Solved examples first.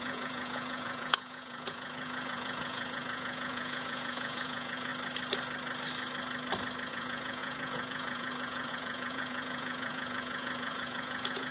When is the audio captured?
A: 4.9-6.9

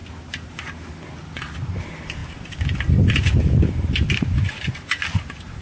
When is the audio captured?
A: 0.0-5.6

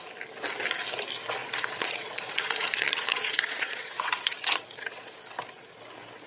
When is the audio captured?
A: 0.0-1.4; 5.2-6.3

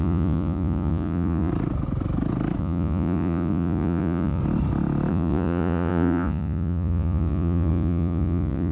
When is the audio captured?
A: 1.5-2.6; 4.4-5.1